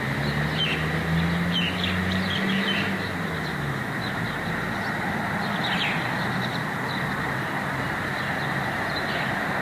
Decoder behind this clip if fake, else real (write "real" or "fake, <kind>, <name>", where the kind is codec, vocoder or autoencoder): real